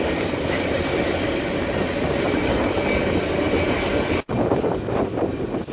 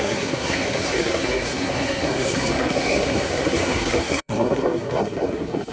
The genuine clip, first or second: first